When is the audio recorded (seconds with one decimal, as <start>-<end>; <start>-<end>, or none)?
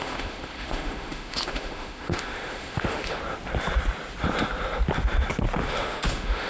3.2-5.6